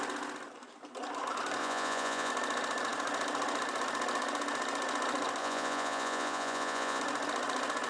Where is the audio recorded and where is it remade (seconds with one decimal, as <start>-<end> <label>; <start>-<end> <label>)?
0.0-1.6 recorded; 1.6-2.3 remade; 2.3-5.4 recorded; 5.4-7.0 remade; 7.0-7.9 recorded